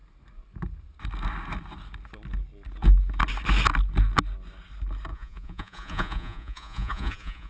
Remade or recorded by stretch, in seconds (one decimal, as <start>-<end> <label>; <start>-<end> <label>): 0.0-5.1 recorded; 5.1-7.5 remade